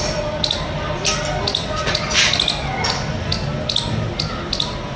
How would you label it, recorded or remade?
recorded